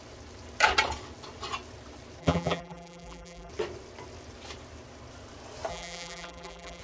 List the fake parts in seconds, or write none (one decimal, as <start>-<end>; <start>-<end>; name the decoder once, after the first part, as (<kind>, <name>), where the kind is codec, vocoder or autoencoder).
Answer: 2.2-3.5 (vocoder, BigVGAN v2); 5.7-6.8